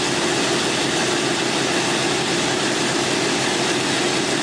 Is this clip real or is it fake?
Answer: real